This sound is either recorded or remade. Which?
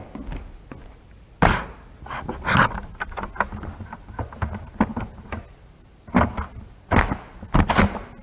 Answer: recorded